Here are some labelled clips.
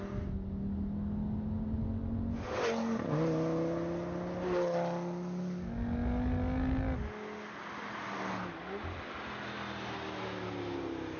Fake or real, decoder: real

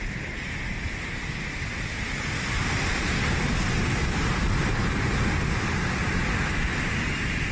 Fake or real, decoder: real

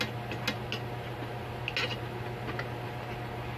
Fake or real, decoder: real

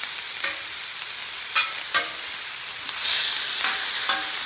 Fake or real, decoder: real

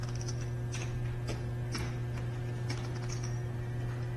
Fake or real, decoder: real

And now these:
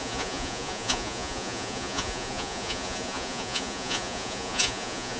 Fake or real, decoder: fake, vocoder, Vocos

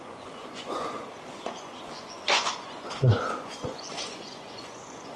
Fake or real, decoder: fake, vocoder, Vocos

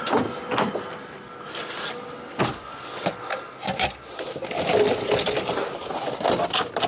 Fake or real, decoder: real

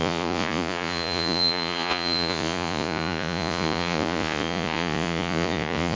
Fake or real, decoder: fake, vocoder, Vocos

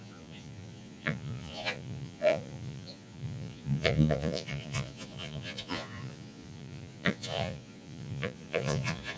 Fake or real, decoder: fake, vocoder, Vocos